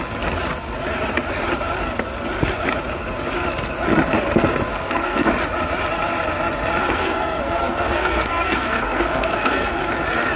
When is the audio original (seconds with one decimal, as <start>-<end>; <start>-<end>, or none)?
0.0-4.7; 5.3-6.8; 9.8-10.4